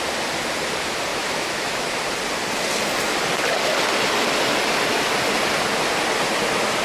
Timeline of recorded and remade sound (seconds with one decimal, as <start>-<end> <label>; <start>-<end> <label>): 0.0-1.1 recorded; 1.1-2.0 remade; 2.0-6.8 recorded